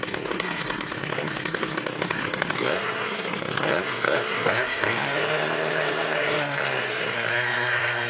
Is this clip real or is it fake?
fake